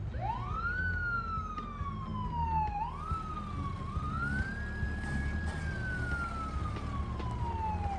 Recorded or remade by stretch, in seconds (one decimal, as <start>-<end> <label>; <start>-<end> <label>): 0.0-8.0 recorded